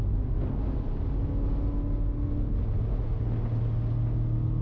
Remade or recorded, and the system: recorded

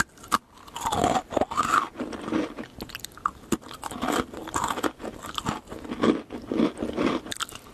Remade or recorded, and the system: recorded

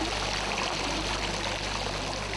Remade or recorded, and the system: recorded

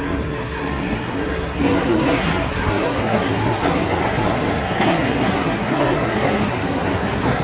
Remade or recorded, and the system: remade, codec, SNAC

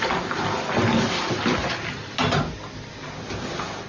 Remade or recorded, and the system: recorded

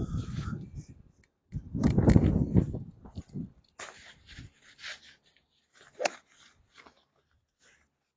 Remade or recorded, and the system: recorded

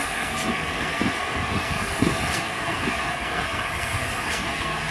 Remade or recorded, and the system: remade, codec, SNAC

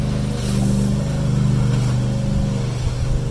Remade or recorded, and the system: recorded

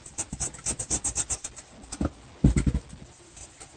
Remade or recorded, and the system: recorded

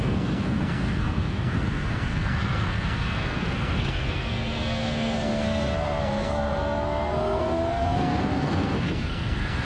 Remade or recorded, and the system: remade, codec, SNAC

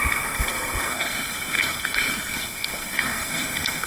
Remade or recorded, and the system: remade, codec, SNAC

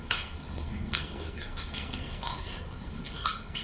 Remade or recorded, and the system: remade, codec, SNAC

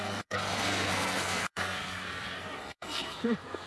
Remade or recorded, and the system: remade, codec, SNAC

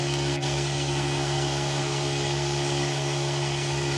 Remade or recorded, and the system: remade, codec, SNAC